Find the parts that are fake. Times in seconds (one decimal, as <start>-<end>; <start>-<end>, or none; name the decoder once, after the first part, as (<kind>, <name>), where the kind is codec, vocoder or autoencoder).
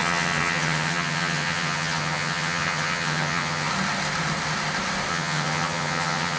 0.0-3.7 (vocoder, HiFi-GAN); 5.1-6.4